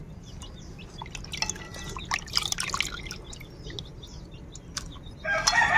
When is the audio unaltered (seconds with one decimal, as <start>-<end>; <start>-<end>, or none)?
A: 0.0-5.8